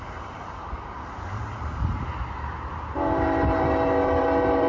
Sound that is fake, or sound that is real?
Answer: fake